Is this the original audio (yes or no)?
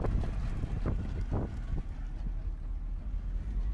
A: yes